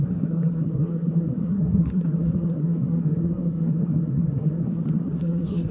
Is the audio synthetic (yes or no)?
yes